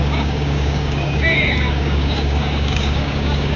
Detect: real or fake fake